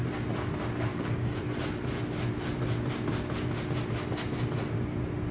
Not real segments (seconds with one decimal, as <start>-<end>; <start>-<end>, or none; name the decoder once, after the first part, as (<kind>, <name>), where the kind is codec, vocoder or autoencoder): 0.9-1.4 (codec, DAC)

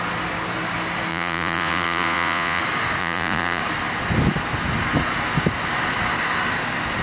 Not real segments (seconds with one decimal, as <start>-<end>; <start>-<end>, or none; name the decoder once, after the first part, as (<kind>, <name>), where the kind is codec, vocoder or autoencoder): 1.1-2.6 (vocoder, Vocos); 3.0-3.6

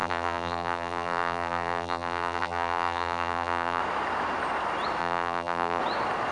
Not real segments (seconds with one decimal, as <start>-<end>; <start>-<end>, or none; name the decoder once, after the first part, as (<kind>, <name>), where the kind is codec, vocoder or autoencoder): 0.0-3.8 (vocoder, BigVGAN v2); 5.0-5.8

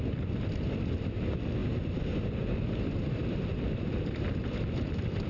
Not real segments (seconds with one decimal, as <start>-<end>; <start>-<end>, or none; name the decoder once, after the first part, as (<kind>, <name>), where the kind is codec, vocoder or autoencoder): none